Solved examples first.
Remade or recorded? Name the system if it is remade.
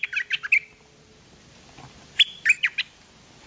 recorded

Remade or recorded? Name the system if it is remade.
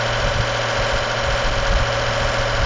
recorded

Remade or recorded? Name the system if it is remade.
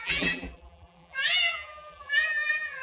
remade, vocoder, BigVGAN v2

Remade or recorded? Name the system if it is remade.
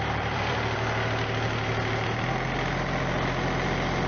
remade, vocoder, BigVGAN v2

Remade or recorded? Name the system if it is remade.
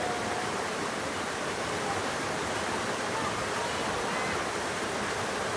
recorded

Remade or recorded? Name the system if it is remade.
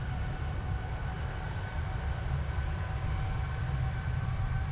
recorded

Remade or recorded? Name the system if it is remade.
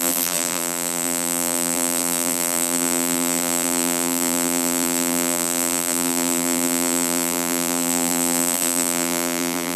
remade, vocoder, BigVGAN v2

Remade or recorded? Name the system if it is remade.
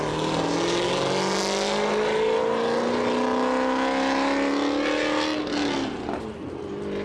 recorded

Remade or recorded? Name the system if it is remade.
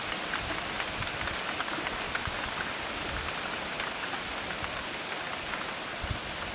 recorded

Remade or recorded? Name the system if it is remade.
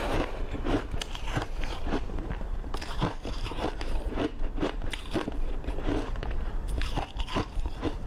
remade, vocoder, BigVGAN v2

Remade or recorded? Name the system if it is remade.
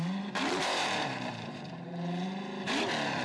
remade, vocoder, BigVGAN v2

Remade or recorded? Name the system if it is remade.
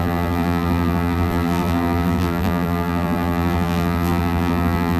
remade, vocoder, BigVGAN v2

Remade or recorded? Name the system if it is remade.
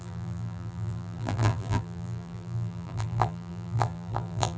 remade, vocoder, BigVGAN v2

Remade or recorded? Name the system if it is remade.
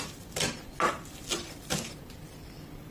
remade, vocoder, BigVGAN v2